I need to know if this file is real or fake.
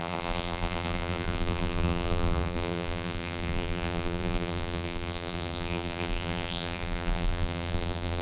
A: fake